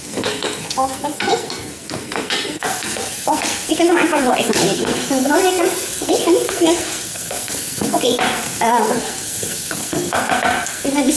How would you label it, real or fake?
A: fake